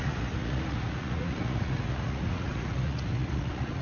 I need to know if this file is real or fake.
fake